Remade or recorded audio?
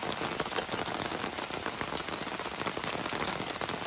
recorded